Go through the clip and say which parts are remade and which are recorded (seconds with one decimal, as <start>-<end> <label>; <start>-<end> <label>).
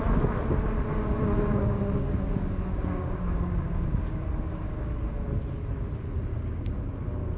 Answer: 0.0-0.9 recorded; 0.9-5.3 remade; 5.3-6.3 recorded; 6.3-6.8 remade; 6.8-7.4 recorded